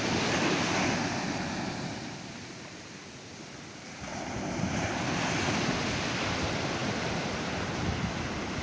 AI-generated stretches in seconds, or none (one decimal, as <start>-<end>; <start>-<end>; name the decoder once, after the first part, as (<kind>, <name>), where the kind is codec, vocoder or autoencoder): 6.8-7.8 (vocoder, BigVGAN v2)